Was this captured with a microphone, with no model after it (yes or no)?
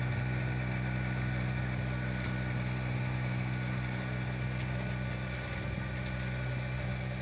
yes